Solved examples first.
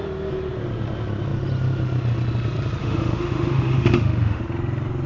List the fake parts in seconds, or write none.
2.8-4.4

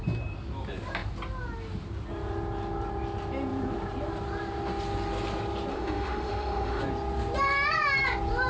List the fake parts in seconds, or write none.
5.7-6.8

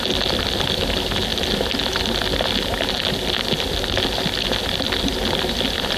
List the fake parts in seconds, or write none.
none

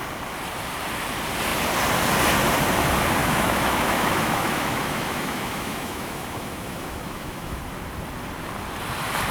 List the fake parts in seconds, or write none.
3.2-7.6

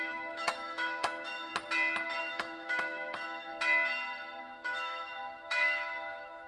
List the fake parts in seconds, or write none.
0.0-1.5; 2.2-3.5; 4.4-6.5

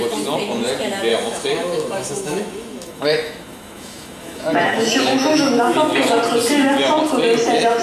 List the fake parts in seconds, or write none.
1.1-5.6